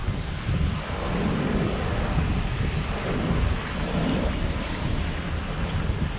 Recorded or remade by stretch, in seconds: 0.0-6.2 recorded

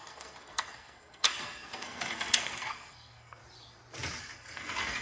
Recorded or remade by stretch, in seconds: 0.0-3.4 remade; 3.4-4.2 recorded; 4.2-5.0 remade

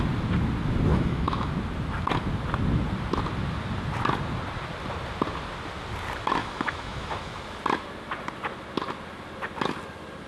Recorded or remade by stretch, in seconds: 0.0-0.9 recorded; 0.9-1.5 remade; 1.5-6.4 recorded; 6.4-7.4 remade; 7.4-10.3 recorded